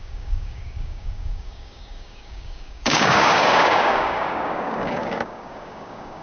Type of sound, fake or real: fake